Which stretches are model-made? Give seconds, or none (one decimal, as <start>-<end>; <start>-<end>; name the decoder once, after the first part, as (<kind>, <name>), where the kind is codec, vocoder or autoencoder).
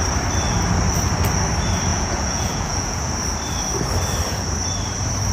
1.9-3.1 (vocoder, Vocos)